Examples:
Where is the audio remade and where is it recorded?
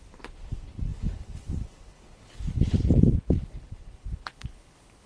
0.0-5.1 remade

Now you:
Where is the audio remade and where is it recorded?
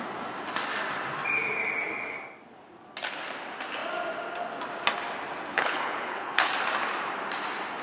0.0-5.5 recorded; 5.5-6.5 remade; 6.5-7.8 recorded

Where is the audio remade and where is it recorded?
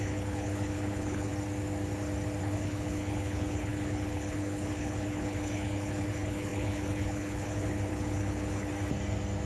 0.0-1.3 remade; 1.3-2.4 recorded; 2.4-8.7 remade; 8.7-9.5 recorded